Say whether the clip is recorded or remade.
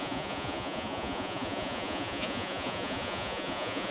remade